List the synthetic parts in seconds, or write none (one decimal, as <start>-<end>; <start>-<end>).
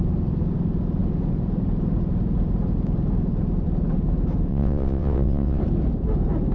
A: 4.5-5.6